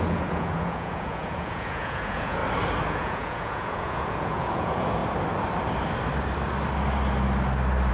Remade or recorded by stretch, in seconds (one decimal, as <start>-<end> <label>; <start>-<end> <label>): 0.0-2.4 remade; 2.4-2.9 recorded; 2.9-5.0 remade; 5.0-7.9 recorded